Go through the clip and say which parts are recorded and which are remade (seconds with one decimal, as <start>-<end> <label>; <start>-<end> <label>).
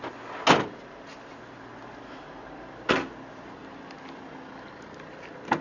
0.0-5.6 recorded